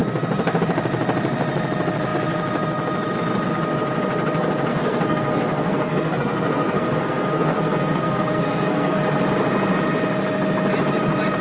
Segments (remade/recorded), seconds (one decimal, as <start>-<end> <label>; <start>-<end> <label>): 0.0-4.7 recorded; 4.7-9.0 remade; 9.0-11.4 recorded